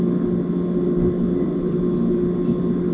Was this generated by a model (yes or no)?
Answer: no